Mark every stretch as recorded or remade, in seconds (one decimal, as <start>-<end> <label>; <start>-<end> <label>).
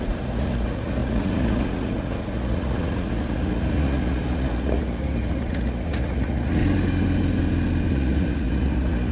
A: 0.0-6.6 remade; 6.6-7.9 recorded; 7.9-9.1 remade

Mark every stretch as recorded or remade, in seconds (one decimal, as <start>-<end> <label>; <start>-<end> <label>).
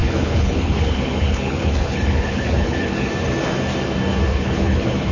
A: 0.0-3.1 remade; 3.1-4.3 recorded; 4.3-5.1 remade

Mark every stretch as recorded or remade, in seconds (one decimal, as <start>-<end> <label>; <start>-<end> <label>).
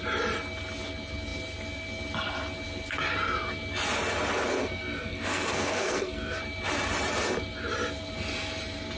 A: 0.0-4.6 recorded; 4.6-6.4 remade; 6.4-9.0 recorded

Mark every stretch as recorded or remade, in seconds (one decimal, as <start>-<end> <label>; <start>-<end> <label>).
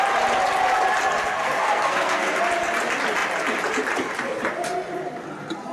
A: 0.0-1.3 recorded; 1.3-2.4 remade; 2.4-5.7 recorded